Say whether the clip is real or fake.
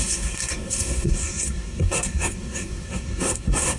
fake